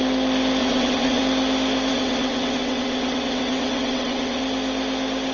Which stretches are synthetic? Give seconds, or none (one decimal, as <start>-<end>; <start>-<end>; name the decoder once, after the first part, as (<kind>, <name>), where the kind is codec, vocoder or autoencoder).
0.6-1.2 (vocoder, WaveNeXt); 1.9-4.4